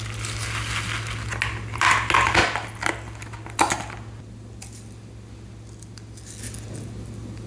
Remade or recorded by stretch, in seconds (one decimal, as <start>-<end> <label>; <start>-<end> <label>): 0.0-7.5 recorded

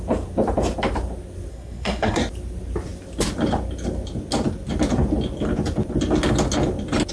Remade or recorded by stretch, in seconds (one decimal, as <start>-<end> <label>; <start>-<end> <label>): 0.0-1.5 recorded; 1.5-2.2 remade; 2.2-7.1 recorded

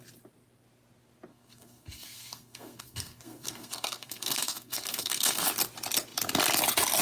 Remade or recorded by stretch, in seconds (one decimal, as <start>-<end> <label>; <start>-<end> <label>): 0.0-1.3 recorded; 1.3-5.5 remade; 5.5-7.0 recorded

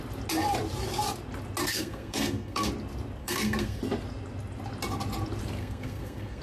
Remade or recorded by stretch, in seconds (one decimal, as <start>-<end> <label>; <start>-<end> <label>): 0.0-1.6 recorded; 1.6-2.7 remade; 2.7-3.2 recorded; 3.2-3.8 remade; 3.8-5.6 recorded; 5.6-6.4 remade

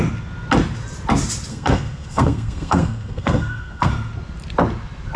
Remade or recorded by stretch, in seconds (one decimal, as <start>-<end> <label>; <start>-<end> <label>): 0.0-1.5 recorded; 1.5-3.9 remade; 3.9-5.2 recorded